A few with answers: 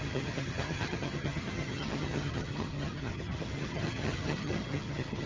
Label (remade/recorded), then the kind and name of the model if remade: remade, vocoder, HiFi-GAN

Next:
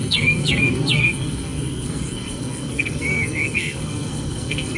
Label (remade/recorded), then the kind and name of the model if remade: remade, codec, SNAC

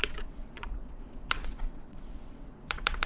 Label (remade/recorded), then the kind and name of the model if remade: remade, vocoder, WaveNeXt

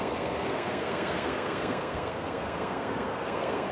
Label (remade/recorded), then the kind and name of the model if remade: remade, codec, SNAC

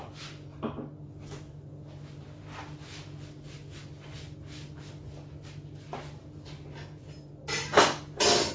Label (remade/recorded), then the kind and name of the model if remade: recorded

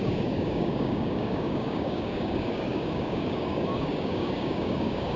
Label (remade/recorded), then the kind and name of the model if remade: remade, codec, DAC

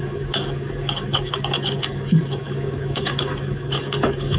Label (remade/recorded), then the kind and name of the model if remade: remade, codec, DAC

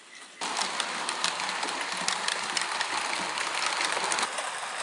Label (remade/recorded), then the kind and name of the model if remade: recorded